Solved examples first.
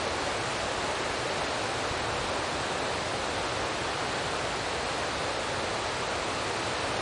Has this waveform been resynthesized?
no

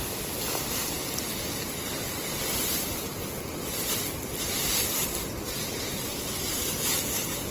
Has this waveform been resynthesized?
no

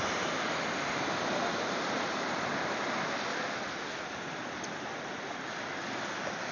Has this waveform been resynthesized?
no